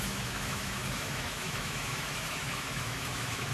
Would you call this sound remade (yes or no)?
yes